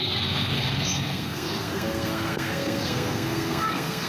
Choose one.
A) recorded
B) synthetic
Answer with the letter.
B